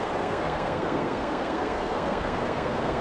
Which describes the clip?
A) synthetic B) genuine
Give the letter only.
A